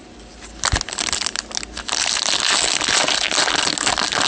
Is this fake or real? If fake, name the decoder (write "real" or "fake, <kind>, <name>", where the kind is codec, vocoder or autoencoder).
real